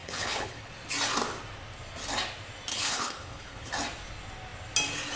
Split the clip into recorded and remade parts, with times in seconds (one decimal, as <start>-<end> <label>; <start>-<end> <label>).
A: 0.0-0.7 remade; 0.7-2.7 recorded; 2.7-3.7 remade; 3.7-5.2 recorded